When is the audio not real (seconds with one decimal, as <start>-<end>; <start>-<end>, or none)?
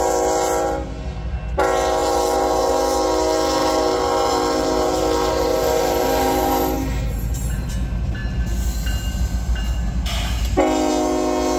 2.0-2.7; 3.6-7.7